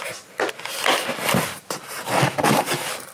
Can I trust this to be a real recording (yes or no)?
yes